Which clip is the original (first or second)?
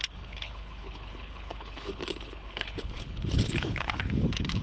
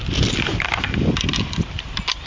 second